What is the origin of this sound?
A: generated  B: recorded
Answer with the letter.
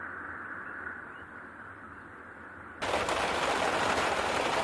A